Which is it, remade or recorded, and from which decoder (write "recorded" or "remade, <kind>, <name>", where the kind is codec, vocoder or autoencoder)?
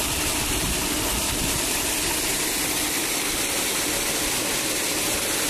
recorded